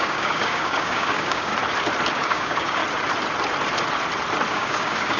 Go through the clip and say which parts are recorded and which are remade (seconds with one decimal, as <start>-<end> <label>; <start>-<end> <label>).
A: 0.0-1.5 remade; 1.5-2.1 recorded; 2.1-2.8 remade; 2.8-4.5 recorded; 4.5-5.2 remade